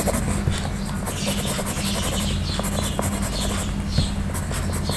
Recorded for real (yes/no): yes